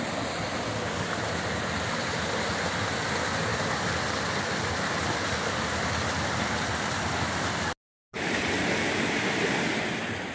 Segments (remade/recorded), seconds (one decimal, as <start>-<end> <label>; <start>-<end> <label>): 0.0-10.3 recorded